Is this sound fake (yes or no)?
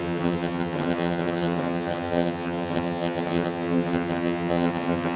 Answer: yes